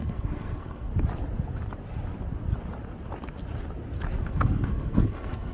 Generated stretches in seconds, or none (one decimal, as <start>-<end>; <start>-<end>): 0.0-0.9; 4.2-5.5

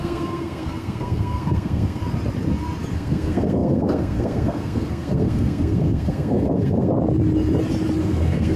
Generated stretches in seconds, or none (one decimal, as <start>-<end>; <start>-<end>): 0.0-2.0; 2.9-6.9; 8.0-8.6

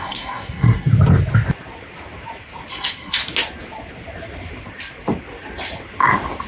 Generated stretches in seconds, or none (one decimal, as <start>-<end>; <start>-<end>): 0.0-0.9; 2.7-3.2

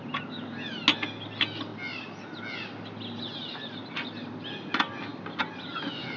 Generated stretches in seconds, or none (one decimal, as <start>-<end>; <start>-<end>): none